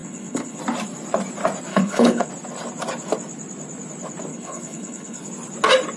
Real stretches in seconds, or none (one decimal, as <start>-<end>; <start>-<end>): 0.6-1.7; 2.3-4.3; 5.3-6.0